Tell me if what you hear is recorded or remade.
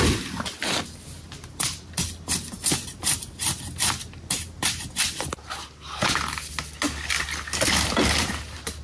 recorded